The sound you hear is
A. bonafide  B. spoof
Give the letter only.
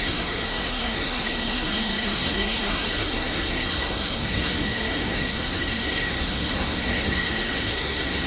B